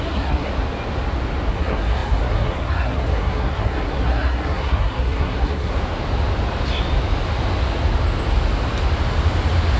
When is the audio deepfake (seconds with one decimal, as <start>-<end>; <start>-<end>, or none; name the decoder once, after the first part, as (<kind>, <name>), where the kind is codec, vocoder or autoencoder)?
0.0-0.5 (codec, SNAC); 1.5-5.7